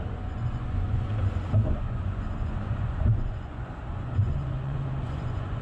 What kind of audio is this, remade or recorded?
remade